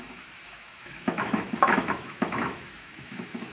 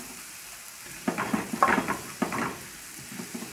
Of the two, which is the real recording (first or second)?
second